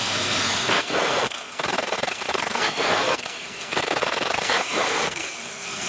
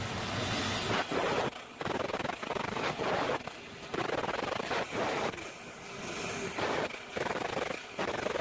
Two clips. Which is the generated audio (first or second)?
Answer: first